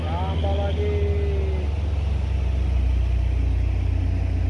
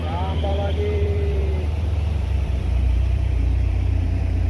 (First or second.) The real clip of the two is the first